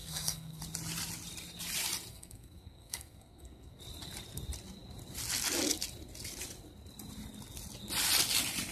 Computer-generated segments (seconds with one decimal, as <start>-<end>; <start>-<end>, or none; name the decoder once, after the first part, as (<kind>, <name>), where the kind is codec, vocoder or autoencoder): 0.0-0.6 (codec, SNAC); 2.1-3.8